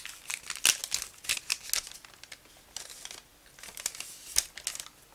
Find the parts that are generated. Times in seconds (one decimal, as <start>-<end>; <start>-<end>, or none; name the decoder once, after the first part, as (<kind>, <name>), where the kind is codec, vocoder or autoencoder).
none